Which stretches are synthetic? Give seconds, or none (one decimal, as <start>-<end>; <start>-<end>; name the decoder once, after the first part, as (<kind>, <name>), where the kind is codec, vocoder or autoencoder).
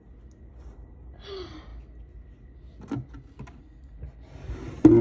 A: none